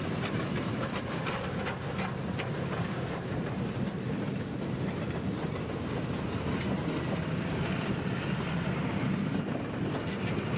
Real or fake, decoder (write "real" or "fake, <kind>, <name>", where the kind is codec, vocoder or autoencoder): real